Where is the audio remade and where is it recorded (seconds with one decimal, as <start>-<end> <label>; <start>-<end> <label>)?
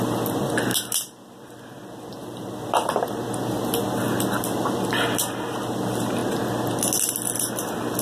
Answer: 0.0-6.2 remade; 6.2-7.5 recorded; 7.5-8.0 remade